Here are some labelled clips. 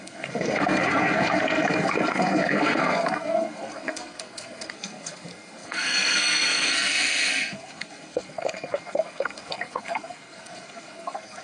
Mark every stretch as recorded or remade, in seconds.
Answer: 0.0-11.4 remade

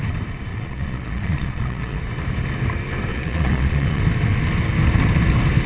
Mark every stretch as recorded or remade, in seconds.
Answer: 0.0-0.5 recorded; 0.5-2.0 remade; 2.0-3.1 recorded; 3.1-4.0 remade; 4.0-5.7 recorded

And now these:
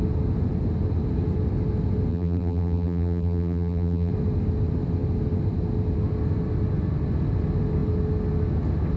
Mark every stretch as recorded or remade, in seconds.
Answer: 0.0-2.1 recorded; 2.1-4.1 remade; 4.1-9.0 recorded

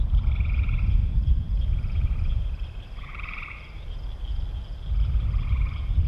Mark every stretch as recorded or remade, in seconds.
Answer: 0.0-1.0 recorded; 1.0-3.9 remade; 3.9-6.1 recorded

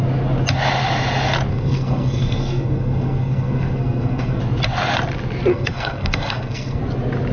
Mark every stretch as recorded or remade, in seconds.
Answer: 0.0-1.5 recorded; 1.5-4.4 remade; 4.4-5.5 recorded; 5.5-6.8 remade; 6.8-7.3 recorded